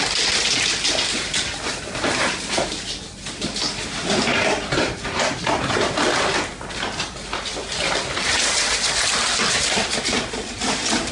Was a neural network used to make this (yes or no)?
yes